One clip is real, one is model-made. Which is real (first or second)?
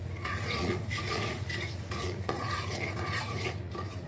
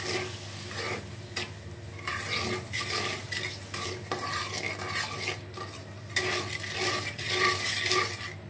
second